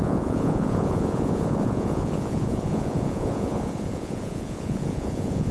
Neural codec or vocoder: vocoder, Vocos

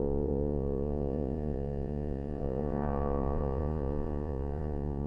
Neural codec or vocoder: vocoder, Vocos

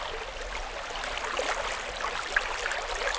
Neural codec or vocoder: none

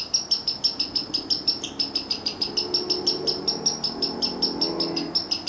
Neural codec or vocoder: none